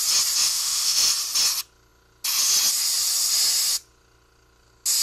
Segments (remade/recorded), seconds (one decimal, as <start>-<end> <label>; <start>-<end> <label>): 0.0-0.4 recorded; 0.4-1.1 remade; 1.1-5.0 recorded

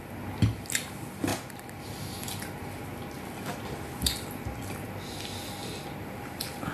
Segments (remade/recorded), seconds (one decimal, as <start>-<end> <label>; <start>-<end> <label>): 0.0-6.7 recorded

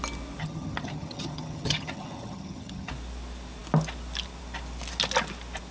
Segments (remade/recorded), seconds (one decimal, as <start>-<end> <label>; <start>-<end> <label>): 0.0-0.4 recorded; 0.4-2.9 remade; 2.9-5.7 recorded